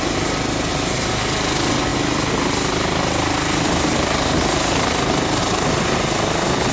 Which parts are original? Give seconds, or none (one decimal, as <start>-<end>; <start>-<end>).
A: 0.0-6.7